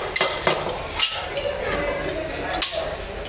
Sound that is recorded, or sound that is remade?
recorded